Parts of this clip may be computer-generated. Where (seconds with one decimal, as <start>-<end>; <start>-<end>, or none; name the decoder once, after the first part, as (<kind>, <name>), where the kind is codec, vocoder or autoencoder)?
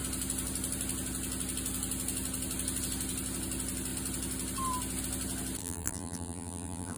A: 5.6-7.0 (vocoder, BigVGAN v2)